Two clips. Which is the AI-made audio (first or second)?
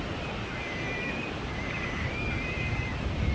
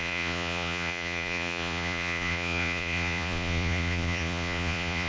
second